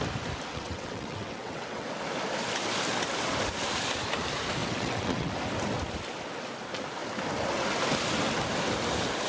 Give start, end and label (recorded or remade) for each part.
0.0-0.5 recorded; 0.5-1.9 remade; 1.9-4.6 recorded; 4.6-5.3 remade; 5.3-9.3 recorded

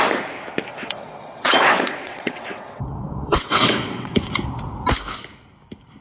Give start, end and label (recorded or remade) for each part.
0.0-0.7 recorded; 0.7-4.3 remade; 4.3-6.0 recorded

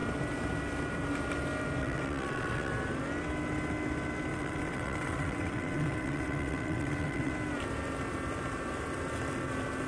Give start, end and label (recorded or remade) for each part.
0.0-1.8 recorded; 1.8-2.7 remade; 2.7-4.3 recorded; 4.3-7.3 remade; 7.3-9.9 recorded

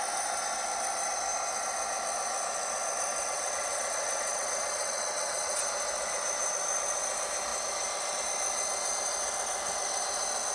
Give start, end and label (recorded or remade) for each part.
0.0-3.1 recorded; 3.1-5.6 remade; 5.6-10.5 recorded

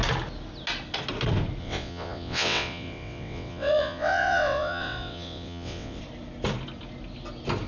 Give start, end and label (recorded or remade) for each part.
0.0-1.6 recorded; 1.6-6.0 remade; 6.0-7.7 recorded

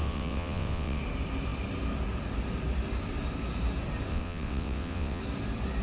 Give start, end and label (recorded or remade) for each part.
0.0-1.0 remade; 1.0-4.1 recorded; 4.1-5.2 remade; 5.2-5.8 recorded